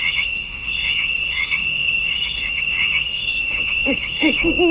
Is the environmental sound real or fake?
fake